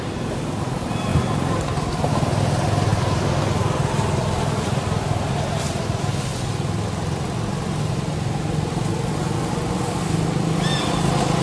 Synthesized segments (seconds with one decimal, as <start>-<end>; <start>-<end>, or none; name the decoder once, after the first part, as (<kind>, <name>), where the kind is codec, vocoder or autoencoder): none